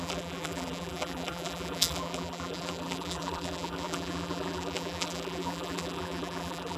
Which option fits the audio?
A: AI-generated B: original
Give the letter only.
A